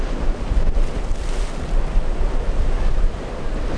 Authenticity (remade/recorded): recorded